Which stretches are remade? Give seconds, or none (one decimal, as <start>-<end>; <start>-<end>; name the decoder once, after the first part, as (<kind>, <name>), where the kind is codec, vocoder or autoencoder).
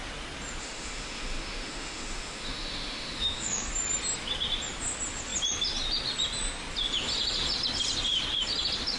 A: 0.6-3.7 (autoencoder, DAC-VAE)